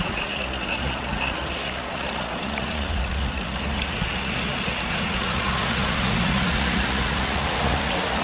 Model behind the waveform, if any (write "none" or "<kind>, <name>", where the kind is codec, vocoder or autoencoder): vocoder, Vocos